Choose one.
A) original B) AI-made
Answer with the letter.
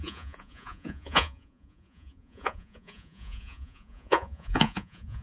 B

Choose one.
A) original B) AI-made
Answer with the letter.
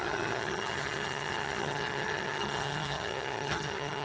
B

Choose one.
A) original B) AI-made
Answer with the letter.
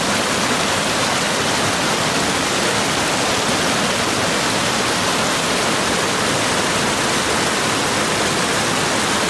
A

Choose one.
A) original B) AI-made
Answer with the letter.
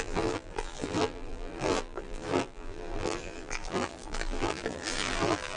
B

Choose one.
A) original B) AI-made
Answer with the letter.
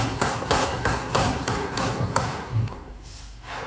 B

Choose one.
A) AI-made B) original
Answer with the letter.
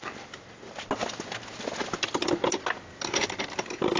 B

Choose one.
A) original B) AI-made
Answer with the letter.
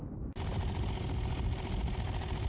A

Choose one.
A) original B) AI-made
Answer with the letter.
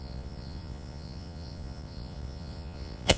B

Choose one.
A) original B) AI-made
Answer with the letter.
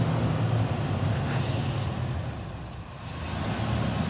A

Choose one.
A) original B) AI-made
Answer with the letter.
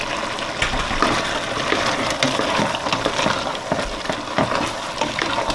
A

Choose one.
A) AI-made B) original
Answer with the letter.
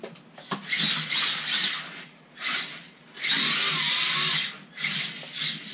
B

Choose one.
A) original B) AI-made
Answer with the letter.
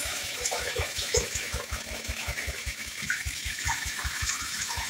B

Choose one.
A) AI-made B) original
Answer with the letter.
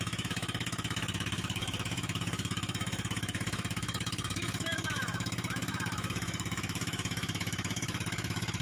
A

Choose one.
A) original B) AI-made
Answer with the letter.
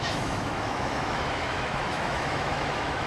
B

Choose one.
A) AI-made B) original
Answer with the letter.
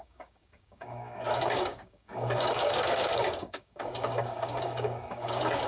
A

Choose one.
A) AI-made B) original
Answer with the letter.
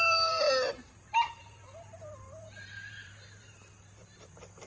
A